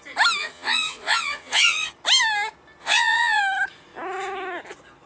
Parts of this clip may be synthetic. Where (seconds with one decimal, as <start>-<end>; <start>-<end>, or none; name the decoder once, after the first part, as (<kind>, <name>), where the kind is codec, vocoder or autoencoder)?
0.4-1.9 (vocoder, Vocos); 2.8-3.4